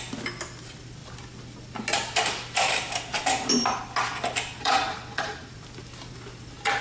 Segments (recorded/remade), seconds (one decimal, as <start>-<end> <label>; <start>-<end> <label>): 0.0-4.5 recorded; 4.5-5.6 remade; 5.6-6.8 recorded